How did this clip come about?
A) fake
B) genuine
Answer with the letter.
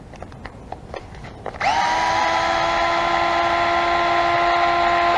B